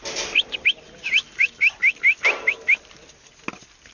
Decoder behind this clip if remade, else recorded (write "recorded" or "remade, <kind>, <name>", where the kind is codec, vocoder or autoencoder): recorded